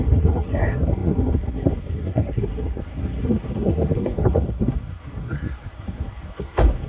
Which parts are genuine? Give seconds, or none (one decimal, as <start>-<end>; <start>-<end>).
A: none